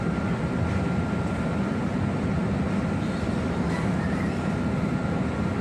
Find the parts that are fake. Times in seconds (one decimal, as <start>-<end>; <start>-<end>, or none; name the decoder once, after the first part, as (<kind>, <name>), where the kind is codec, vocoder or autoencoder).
none